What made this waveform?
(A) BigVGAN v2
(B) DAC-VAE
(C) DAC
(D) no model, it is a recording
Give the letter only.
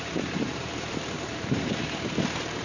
A